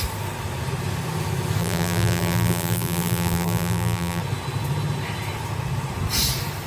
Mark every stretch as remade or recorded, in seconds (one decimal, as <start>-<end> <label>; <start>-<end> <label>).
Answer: 0.0-1.6 recorded; 1.6-4.2 remade; 4.2-6.7 recorded